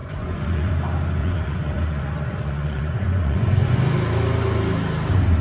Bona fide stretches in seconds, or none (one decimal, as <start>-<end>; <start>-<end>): 0.7-1.2; 3.8-5.4